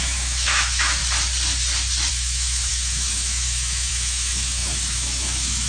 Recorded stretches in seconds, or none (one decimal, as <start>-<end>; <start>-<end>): 1.0-2.1